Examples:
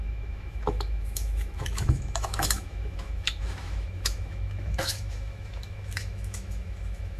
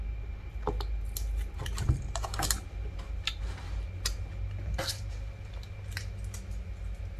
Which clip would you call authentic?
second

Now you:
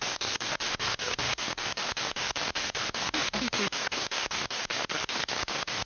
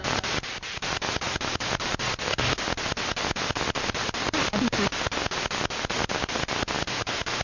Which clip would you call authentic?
second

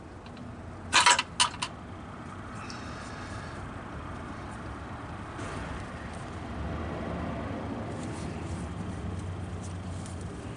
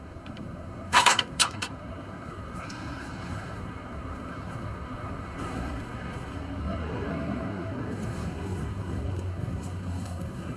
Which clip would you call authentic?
first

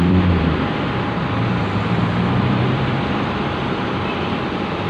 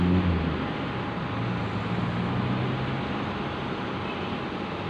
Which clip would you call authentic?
second